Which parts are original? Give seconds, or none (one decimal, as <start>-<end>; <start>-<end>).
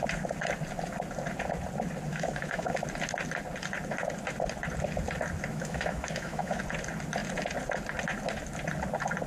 0.0-2.1; 2.8-5.5; 6.6-9.3